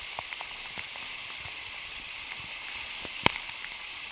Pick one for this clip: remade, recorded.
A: recorded